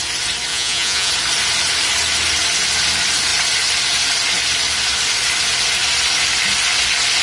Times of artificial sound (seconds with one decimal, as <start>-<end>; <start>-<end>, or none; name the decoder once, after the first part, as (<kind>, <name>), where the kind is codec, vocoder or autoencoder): 0.5-1.1 (vocoder, Vocos)